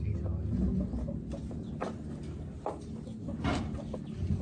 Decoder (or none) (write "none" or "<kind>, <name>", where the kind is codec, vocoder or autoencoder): none